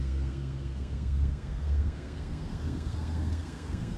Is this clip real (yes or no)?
no